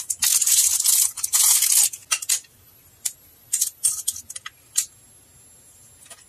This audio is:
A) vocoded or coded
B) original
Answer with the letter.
B